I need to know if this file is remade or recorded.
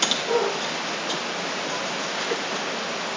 recorded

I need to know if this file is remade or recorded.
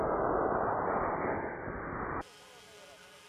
recorded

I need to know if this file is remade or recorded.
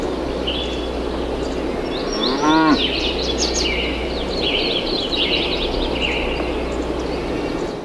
recorded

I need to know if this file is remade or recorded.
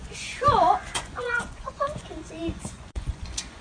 remade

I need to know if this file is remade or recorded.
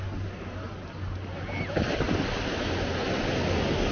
recorded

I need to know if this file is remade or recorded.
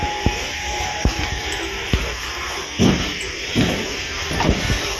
recorded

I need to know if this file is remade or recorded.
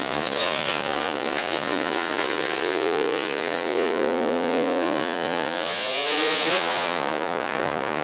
remade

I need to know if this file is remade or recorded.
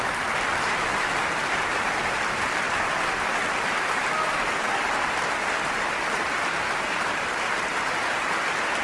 remade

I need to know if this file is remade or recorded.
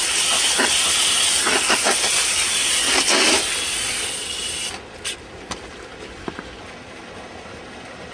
recorded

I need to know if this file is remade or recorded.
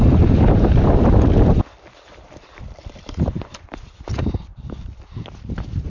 remade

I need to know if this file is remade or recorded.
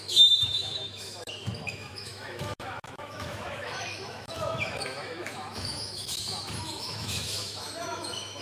remade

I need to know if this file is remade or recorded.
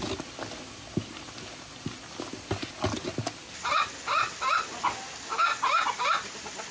recorded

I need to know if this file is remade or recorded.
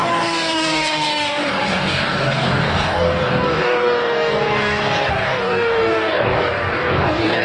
remade